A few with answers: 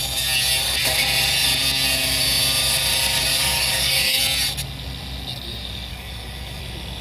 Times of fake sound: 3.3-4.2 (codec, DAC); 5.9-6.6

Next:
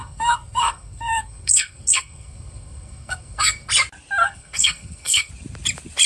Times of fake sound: 0.0-3.7 (codec, SNAC); 4.2-5.3

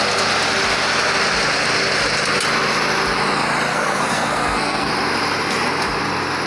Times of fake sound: 3.7-4.9 (codec, SNAC)

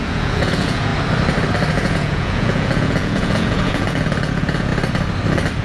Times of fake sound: 0.0-0.9 (vocoder, Vocos); 1.7-4.7

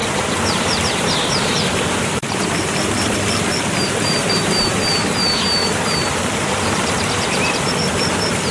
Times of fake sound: 0.0-4.5 (vocoder, BigVGAN v2); 5.6-7.5

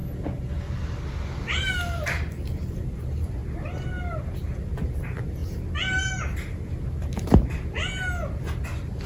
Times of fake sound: none

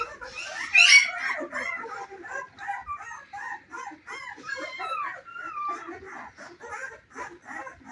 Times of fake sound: none